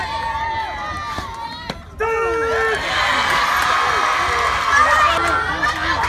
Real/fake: real